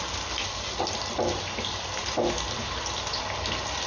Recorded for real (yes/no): yes